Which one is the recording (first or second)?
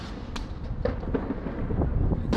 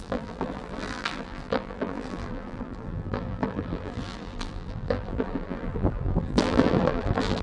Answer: first